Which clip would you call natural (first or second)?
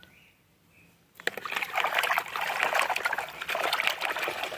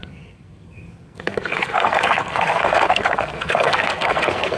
first